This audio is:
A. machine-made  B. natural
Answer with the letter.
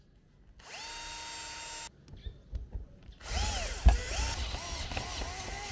B